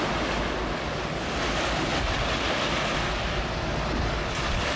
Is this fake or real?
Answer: real